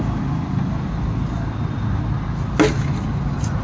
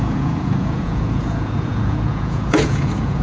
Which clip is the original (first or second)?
first